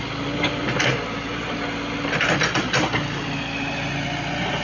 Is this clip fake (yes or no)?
no